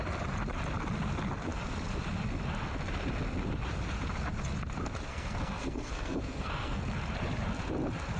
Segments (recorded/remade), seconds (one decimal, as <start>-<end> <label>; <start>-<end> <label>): 0.0-5.1 recorded; 5.1-6.8 remade; 6.8-8.2 recorded